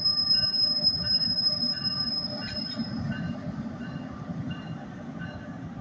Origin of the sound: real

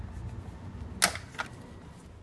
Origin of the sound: real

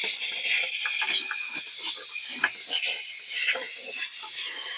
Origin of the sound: real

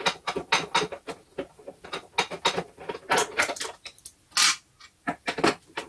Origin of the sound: real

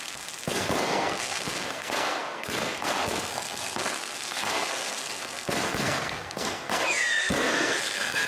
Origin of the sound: fake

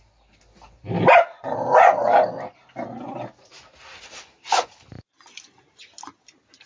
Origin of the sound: real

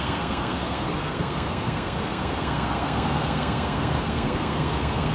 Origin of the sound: fake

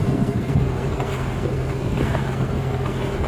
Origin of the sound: fake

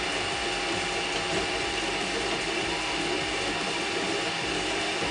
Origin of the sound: real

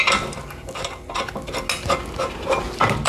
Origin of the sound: real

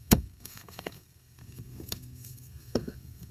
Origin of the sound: fake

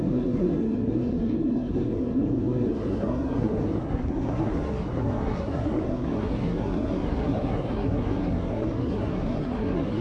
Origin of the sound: fake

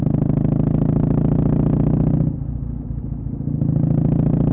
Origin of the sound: real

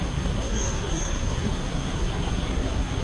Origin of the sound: fake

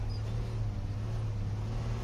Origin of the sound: real